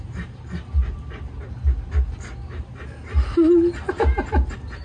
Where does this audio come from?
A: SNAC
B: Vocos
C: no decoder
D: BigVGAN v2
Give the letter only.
C